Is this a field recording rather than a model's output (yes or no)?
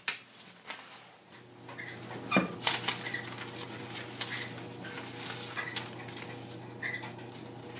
yes